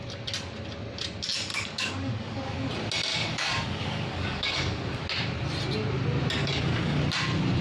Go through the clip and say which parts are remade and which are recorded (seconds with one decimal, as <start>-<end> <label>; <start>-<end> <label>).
0.0-1.5 recorded; 1.5-2.7 remade; 2.7-3.1 recorded; 3.1-5.0 remade; 5.0-6.4 recorded; 6.4-7.0 remade; 7.0-7.6 recorded